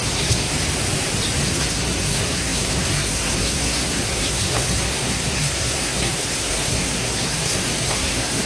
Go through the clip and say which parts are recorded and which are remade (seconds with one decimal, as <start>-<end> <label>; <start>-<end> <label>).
0.0-0.5 remade; 0.5-1.4 recorded; 1.4-8.5 remade